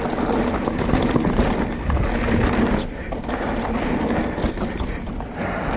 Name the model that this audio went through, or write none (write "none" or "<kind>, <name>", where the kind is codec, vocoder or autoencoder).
none